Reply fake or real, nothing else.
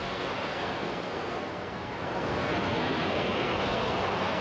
fake